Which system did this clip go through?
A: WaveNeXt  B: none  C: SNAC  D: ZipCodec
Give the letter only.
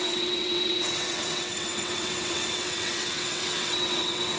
A